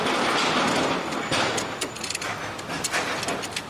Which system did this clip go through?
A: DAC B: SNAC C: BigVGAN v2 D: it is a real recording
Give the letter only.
D